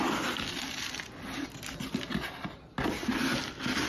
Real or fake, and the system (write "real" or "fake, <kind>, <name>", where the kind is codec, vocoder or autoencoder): real